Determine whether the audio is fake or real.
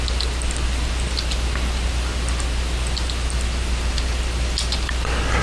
real